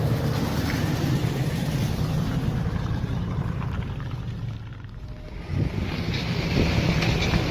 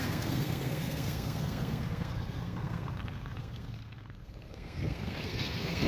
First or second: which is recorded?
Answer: first